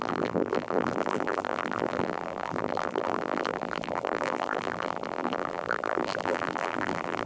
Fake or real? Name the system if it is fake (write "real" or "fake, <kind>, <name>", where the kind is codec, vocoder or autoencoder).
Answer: fake, vocoder, BigVGAN v2